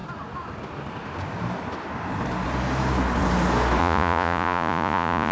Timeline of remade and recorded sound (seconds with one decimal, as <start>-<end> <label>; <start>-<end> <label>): 0.0-3.8 recorded; 3.8-5.3 remade